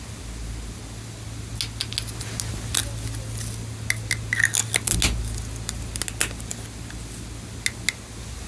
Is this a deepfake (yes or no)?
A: no